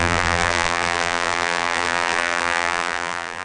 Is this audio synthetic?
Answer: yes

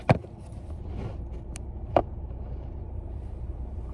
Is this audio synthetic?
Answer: yes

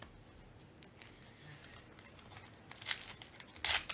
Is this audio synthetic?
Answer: no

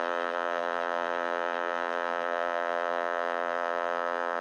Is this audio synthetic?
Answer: yes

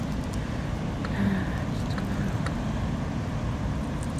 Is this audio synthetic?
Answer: no